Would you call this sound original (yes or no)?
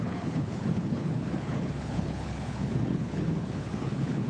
no